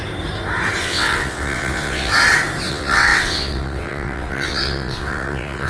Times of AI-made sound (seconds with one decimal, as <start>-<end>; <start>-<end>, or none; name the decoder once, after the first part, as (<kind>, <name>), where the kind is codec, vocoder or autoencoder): 0.8-2.1 (vocoder, WaveNeXt); 2.7-5.7